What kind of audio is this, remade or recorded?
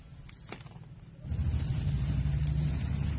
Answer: recorded